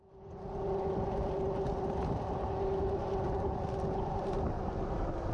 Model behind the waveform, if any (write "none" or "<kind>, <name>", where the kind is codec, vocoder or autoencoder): none